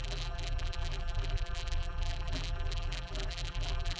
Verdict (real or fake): fake